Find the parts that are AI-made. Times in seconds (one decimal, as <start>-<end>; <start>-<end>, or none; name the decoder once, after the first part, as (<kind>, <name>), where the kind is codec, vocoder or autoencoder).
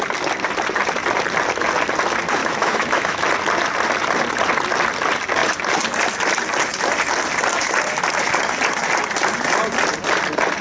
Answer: 2.4-3.3 (autoencoder, DAC-VAE)